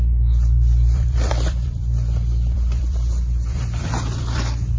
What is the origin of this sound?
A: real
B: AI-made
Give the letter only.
B